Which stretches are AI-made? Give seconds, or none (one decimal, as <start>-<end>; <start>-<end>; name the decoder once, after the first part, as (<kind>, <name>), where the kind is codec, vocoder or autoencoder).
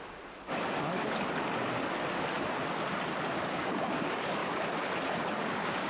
3.5-4.4 (codec, DAC); 5.2-5.9